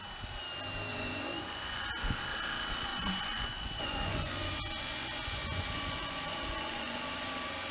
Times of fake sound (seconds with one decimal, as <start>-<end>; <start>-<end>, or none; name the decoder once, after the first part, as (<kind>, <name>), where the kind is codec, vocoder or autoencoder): 0.9-2.2 (vocoder, Vocos); 2.9-7.3